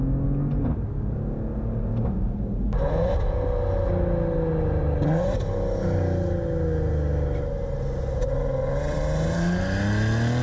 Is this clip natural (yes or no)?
yes